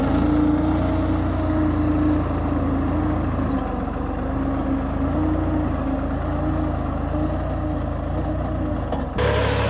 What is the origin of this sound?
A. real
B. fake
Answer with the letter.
A